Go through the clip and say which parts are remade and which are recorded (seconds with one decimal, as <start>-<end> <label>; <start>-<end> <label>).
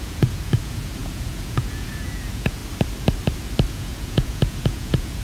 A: 0.0-2.6 remade; 2.6-3.7 recorded; 3.7-5.2 remade